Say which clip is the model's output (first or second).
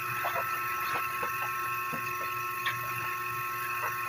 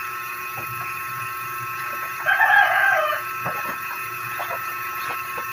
second